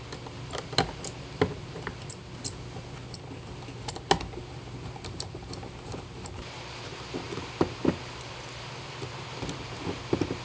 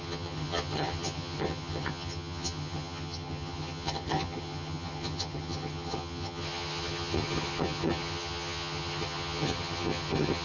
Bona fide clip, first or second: first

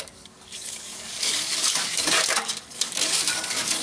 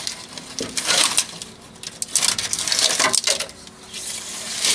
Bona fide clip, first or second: second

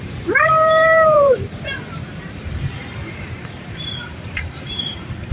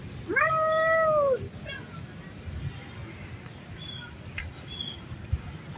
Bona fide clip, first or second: second